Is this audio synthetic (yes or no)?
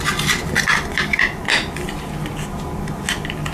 no